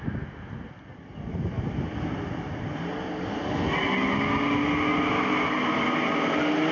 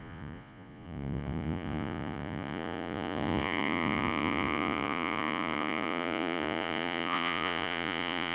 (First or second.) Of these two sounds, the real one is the first